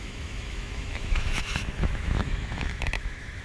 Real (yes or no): no